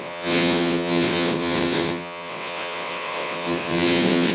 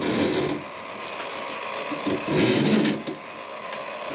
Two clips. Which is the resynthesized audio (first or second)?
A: first